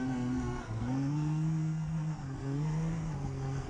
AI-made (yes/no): yes